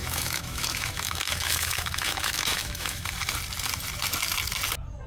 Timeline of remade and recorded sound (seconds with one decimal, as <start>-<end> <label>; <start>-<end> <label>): 0.0-3.1 remade; 3.1-5.1 recorded